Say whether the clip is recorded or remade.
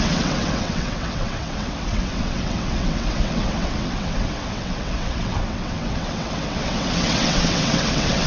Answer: remade